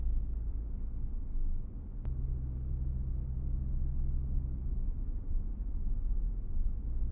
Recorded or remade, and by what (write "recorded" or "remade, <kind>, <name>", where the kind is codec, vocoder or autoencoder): recorded